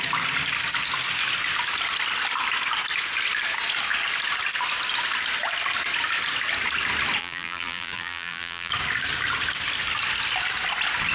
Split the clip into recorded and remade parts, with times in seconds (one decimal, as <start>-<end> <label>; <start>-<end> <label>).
0.0-7.2 recorded; 7.2-8.7 remade; 8.7-11.1 recorded

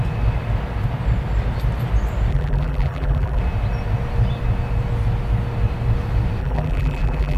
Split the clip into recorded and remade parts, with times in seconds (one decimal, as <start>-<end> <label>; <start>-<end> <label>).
0.0-2.3 recorded; 2.3-3.4 remade; 3.4-6.4 recorded; 6.4-7.4 remade